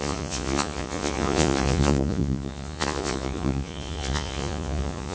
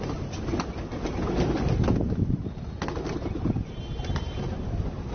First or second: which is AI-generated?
first